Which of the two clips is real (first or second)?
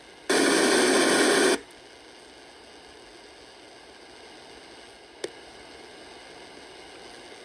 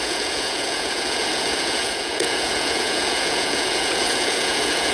first